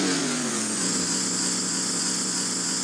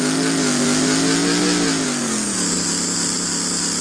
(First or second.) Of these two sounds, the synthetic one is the first